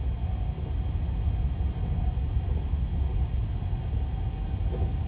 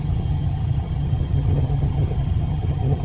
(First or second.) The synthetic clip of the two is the second